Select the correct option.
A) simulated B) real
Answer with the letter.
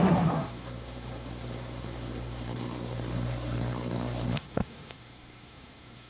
A